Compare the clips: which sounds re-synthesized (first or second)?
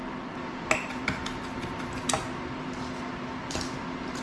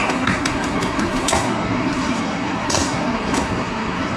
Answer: second